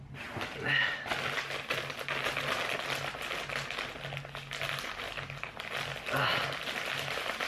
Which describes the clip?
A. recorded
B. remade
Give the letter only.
A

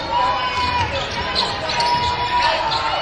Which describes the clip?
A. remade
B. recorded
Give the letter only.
B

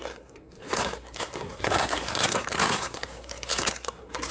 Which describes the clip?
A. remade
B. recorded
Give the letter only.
A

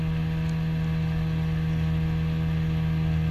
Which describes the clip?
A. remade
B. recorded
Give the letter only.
B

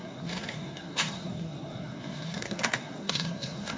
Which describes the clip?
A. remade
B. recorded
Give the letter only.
A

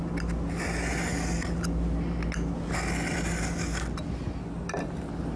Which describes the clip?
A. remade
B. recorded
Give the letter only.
B